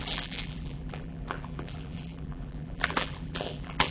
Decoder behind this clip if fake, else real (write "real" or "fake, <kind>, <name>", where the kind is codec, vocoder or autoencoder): fake, vocoder, BigVGAN v2